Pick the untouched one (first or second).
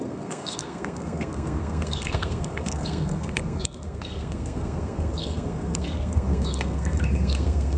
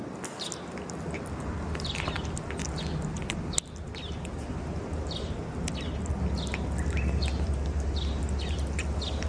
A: second